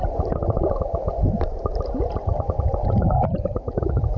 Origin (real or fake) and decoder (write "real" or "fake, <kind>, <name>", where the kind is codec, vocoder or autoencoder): fake, vocoder, BigVGAN v2